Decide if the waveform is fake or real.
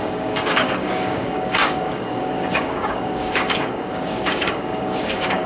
fake